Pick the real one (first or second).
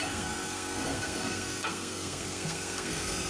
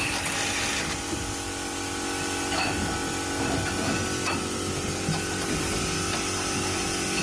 second